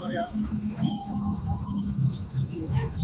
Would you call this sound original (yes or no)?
no